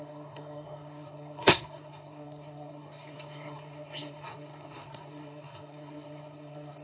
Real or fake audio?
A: fake